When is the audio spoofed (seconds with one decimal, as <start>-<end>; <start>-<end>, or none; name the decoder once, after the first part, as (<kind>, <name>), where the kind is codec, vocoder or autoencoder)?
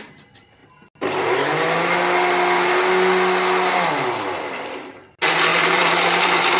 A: 5.5-6.6 (vocoder, BigVGAN v2)